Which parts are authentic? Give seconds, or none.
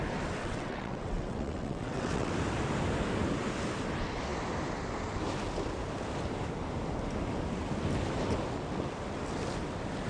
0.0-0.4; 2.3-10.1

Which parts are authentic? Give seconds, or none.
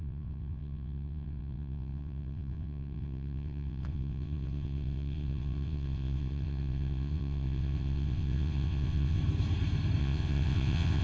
9.2-10.0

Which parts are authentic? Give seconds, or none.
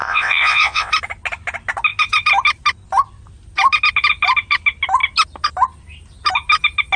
0.9-7.0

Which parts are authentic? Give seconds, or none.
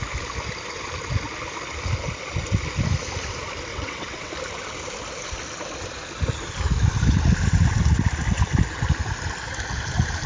0.0-3.7; 4.3-10.3